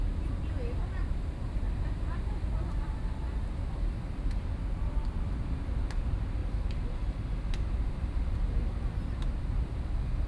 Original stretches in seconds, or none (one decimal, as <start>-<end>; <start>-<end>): 0.0-6.4